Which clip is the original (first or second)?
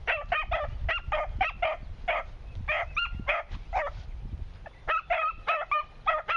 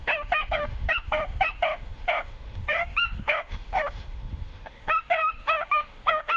first